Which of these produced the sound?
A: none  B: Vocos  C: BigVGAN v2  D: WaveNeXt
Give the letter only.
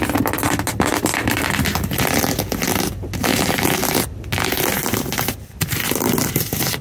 A